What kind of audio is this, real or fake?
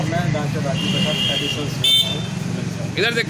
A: real